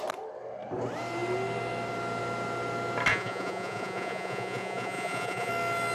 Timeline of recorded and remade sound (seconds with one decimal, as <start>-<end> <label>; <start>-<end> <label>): 0.0-3.1 recorded; 3.1-5.5 remade; 5.5-5.9 recorded